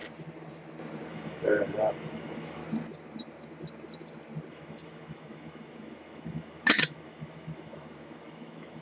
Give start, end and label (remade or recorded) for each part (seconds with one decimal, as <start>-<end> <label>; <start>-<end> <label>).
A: 0.0-1.1 recorded; 1.1-2.6 remade; 2.6-4.5 recorded; 4.5-8.8 remade